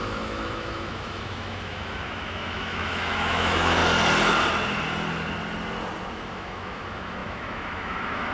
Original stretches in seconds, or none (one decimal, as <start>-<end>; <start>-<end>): 3.8-6.1